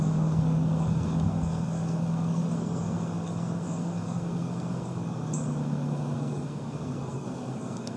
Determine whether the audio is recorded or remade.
remade